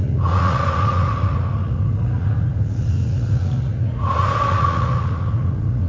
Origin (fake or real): fake